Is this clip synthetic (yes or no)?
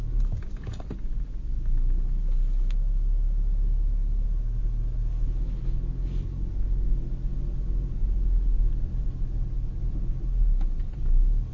no